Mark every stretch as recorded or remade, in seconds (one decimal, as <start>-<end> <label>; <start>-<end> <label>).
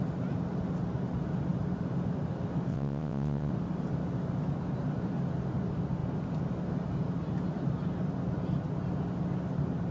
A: 0.0-2.7 recorded; 2.7-3.5 remade; 3.5-9.9 recorded